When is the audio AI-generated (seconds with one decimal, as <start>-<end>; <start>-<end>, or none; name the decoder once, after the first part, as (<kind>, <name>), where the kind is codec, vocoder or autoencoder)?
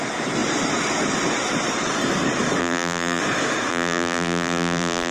2.6-3.2 (vocoder, BigVGAN v2); 3.7-5.1